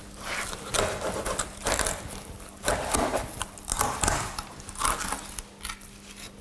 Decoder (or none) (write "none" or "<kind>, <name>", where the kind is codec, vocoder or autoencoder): none